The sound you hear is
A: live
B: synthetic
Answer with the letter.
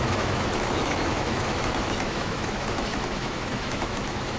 B